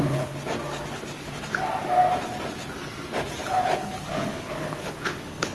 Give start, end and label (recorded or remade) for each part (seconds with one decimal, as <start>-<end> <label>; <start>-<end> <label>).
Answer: 0.0-0.4 remade; 0.4-3.4 recorded; 3.4-5.5 remade